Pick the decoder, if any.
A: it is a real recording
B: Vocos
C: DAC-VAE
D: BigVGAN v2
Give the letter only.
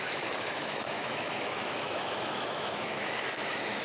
C